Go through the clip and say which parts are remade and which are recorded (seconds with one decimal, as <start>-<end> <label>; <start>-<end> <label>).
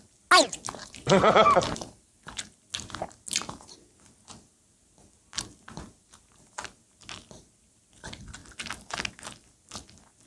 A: 0.0-0.8 recorded; 0.8-2.3 remade; 2.3-10.3 recorded